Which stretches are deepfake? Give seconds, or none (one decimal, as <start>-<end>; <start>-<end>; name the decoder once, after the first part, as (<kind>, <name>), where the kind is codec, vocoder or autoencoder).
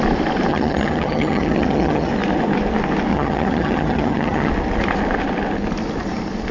0.5-2.1 (vocoder, HiFi-GAN); 3.1-4.5